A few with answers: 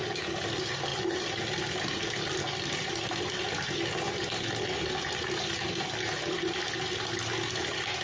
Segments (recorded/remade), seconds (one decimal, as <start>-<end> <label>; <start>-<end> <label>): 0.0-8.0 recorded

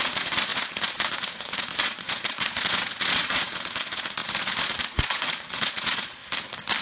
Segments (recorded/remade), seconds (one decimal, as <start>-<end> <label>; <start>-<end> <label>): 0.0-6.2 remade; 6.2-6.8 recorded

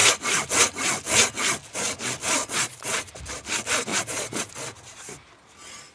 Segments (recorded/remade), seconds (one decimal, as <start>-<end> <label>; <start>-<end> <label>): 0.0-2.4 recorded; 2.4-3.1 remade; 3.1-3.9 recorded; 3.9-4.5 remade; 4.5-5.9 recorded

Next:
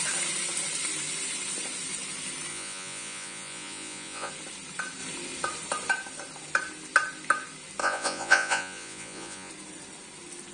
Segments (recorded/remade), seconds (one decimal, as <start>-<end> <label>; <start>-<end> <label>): 0.0-2.5 recorded; 2.5-4.3 remade; 4.3-7.8 recorded; 7.8-9.5 remade; 9.5-10.5 recorded

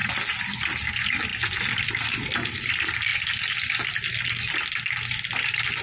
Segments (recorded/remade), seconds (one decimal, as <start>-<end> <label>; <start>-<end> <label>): 0.0-5.8 recorded

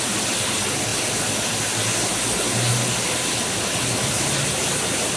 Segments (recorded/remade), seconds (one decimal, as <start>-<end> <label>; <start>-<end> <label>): 0.0-5.2 recorded

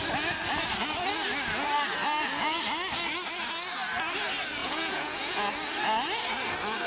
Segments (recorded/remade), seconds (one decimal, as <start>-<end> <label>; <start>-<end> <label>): 0.0-4.6 recorded; 4.6-5.5 remade; 5.5-6.9 recorded

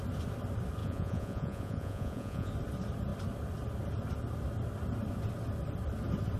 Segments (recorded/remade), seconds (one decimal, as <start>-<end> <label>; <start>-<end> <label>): 0.0-0.8 recorded; 0.8-2.5 remade; 2.5-6.4 recorded